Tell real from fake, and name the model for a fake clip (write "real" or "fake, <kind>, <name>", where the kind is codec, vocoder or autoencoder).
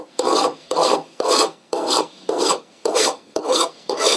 fake, codec, SNAC